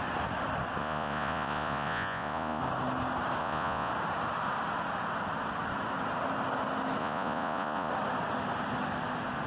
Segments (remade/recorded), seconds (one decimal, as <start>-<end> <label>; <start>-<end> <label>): 0.0-0.8 recorded; 0.8-2.6 remade; 2.6-3.4 recorded; 3.4-3.9 remade; 3.9-7.0 recorded; 7.0-7.9 remade; 7.9-9.5 recorded